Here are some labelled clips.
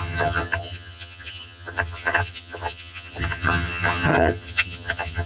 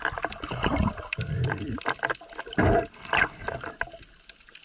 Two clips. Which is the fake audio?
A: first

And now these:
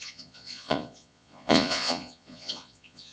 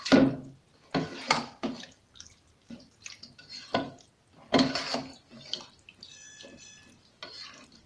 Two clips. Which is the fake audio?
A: first